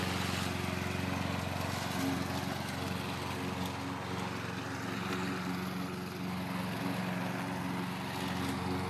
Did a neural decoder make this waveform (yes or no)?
no